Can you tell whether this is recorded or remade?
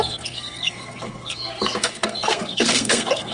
remade